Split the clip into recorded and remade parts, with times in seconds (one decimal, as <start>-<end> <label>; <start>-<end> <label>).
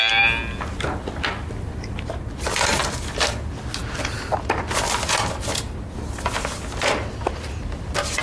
0.0-8.2 recorded